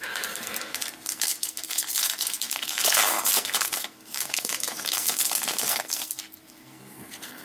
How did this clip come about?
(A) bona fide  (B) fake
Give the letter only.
B